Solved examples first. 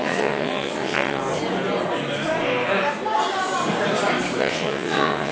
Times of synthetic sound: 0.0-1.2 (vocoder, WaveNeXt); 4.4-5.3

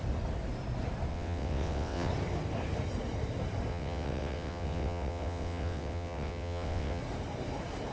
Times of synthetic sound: 1.1-2.1 (vocoder, WaveNeXt); 3.7-7.0

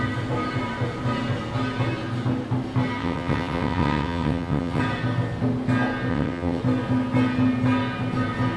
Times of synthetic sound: 3.0-4.8 (vocoder, WaveNeXt); 6.1-6.6

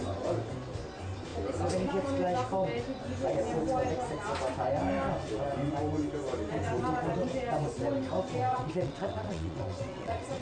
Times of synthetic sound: 8.5-10.4 (vocoder, WaveNeXt)

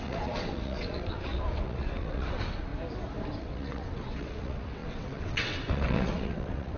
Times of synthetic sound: 0.0-2.7 (vocoder, WaveNeXt); 3.4-6.8

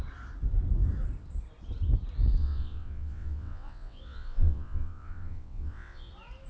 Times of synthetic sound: 2.4-6.1 (vocoder, WaveNeXt)

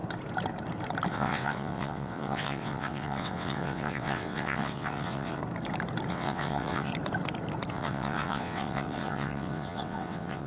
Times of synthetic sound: 1.1-5.4 (vocoder, WaveNeXt); 6.1-6.9; 7.7-10.5

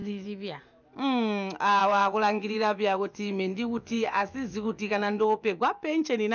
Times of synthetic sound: 0.0-0.6 (vocoder, WaveNeXt); 1.8-5.6